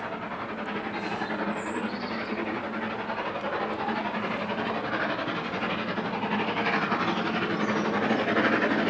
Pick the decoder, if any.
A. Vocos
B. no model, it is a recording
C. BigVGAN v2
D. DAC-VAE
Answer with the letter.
B